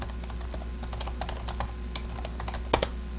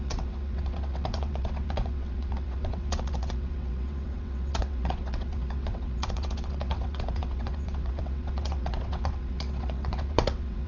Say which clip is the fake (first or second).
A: second